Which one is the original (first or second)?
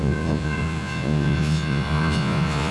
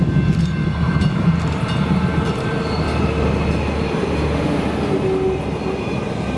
second